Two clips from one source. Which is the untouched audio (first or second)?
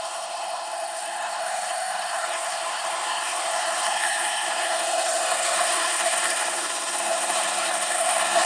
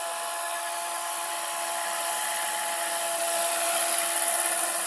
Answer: second